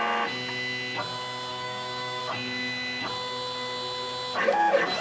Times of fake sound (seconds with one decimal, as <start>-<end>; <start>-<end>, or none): 1.5-2.2